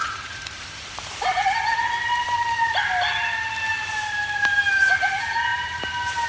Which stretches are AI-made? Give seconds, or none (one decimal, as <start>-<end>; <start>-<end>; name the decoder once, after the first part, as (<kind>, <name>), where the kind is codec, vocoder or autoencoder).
0.0-1.9 (vocoder, BigVGAN v2); 3.7-4.9; 5.5-6.3